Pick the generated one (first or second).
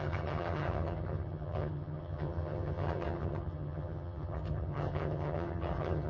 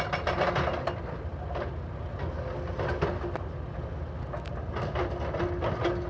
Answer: first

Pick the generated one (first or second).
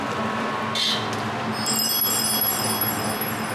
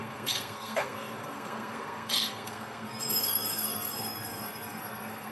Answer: second